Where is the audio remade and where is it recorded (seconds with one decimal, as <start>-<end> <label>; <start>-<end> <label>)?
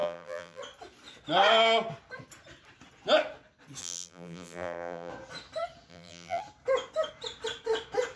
0.0-0.6 remade; 0.6-3.8 recorded; 3.8-5.1 remade; 5.1-5.9 recorded; 5.9-6.4 remade; 6.4-8.2 recorded